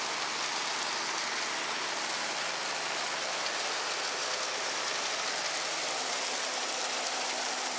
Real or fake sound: real